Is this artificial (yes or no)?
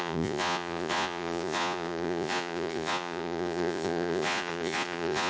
yes